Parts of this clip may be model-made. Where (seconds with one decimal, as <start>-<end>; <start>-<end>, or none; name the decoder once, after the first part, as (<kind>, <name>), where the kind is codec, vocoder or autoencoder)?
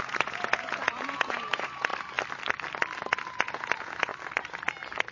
0.0-1.9 (vocoder, Vocos); 3.3-4.1